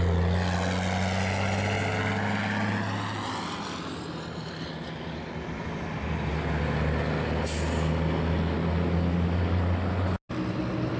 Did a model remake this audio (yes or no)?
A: no